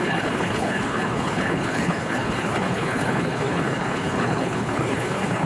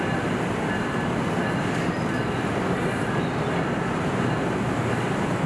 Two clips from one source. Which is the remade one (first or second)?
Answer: first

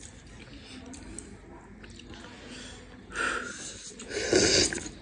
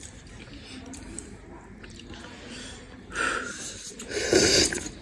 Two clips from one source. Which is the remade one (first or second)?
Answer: second